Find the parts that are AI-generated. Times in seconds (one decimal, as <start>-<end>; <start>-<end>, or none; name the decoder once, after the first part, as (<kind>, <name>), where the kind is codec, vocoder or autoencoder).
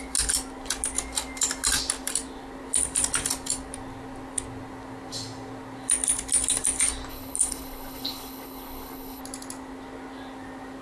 7.1-9.2 (codec, HILCodec)